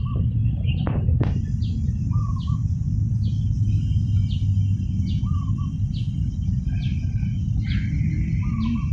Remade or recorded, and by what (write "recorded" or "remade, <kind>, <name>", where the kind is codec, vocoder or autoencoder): recorded